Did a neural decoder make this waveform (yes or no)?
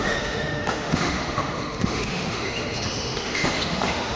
yes